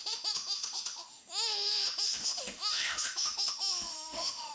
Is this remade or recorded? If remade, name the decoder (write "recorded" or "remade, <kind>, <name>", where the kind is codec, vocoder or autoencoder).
remade, autoencoder, DAC-VAE